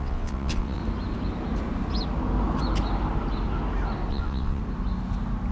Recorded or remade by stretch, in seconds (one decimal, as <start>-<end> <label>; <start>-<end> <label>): 0.0-0.8 remade; 0.8-4.1 recorded; 4.1-4.6 remade; 4.6-5.5 recorded